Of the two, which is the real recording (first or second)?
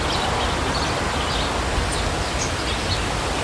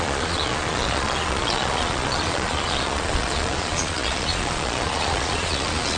first